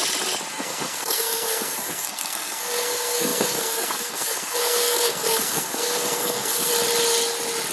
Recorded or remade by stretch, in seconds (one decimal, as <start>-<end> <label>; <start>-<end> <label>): 0.0-0.5 recorded; 0.5-6.7 remade; 6.7-7.7 recorded